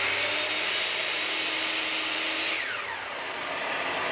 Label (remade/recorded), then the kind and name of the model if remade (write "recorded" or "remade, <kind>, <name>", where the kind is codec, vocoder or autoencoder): recorded